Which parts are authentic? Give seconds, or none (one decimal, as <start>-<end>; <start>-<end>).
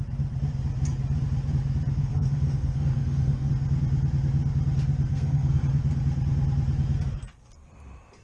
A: 0.0-2.0; 3.5-5.1; 5.6-8.2